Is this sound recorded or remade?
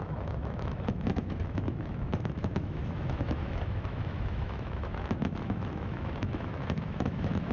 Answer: remade